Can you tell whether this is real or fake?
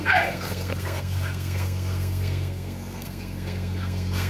fake